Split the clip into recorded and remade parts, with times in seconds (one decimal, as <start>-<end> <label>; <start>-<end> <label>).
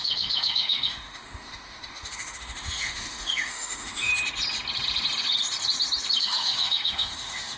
0.0-4.1 remade; 4.1-6.2 recorded; 6.2-7.6 remade